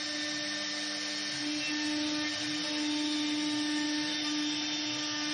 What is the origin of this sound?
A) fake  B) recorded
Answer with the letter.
B